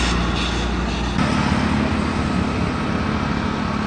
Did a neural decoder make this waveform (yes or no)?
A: no